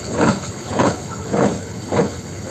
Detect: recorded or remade remade